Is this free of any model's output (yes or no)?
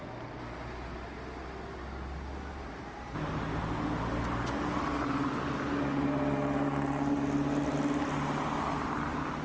yes